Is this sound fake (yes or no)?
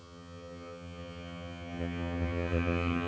yes